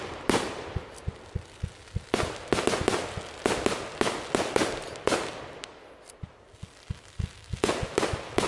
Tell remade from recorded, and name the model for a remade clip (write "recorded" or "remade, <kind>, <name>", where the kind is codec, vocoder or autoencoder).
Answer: recorded